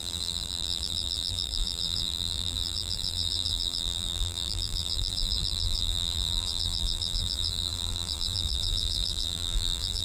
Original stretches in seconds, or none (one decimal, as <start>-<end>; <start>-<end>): none